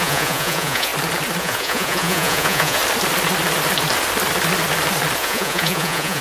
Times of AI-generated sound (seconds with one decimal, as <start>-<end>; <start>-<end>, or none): 0.0-0.9; 1.4-2.8; 5.2-6.2